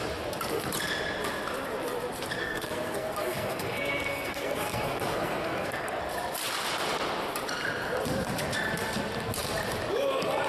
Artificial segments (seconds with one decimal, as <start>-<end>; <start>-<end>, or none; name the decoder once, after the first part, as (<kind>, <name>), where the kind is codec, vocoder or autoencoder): 2.4-6.0 (codec, SNAC)